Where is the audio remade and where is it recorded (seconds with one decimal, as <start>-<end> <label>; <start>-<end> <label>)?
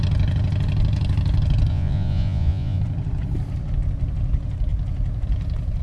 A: 0.0-1.7 recorded; 1.7-2.8 remade; 2.8-5.8 recorded